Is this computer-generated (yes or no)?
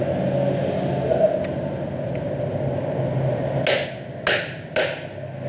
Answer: no